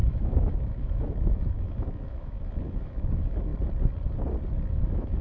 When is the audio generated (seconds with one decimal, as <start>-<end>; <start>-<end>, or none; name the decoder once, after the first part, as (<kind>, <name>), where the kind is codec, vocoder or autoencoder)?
0.0-3.5 (autoencoder, DAC-VAE); 4.7-5.2